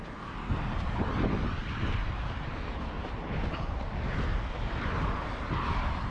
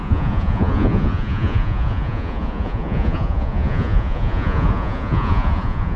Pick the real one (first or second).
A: first